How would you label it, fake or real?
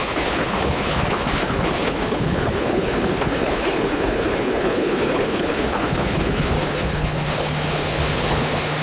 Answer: fake